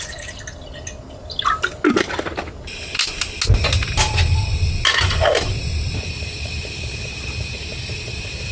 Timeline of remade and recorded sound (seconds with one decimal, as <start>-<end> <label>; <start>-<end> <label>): 0.0-8.5 recorded